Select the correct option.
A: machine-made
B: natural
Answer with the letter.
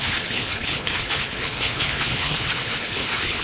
A